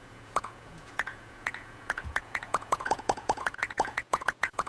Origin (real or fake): fake